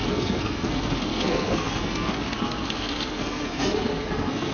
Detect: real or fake fake